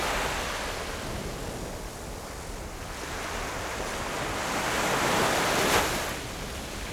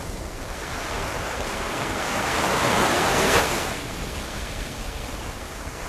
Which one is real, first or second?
first